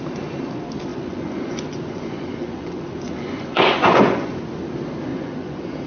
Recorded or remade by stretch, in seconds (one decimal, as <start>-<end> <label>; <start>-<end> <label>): 0.0-0.9 recorded; 0.9-4.4 remade; 4.4-5.1 recorded; 5.1-5.9 remade